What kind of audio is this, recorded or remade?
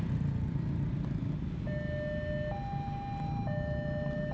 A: recorded